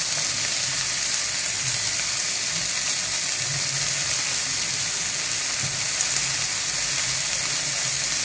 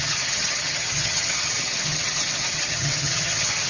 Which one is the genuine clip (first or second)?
first